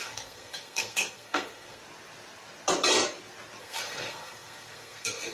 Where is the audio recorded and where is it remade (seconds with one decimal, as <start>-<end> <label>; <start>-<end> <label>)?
0.0-1.8 remade; 1.8-3.6 recorded; 3.6-5.3 remade